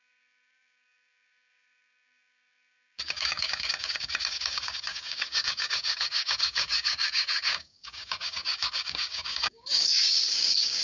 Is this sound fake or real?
fake